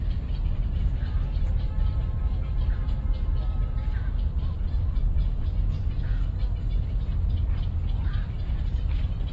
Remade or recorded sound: recorded